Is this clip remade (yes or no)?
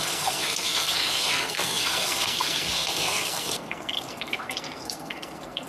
yes